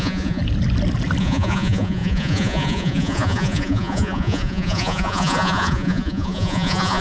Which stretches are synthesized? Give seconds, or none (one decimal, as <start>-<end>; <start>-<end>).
0.0-0.4; 1.2-7.0